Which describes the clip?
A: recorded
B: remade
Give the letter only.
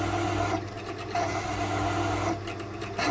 A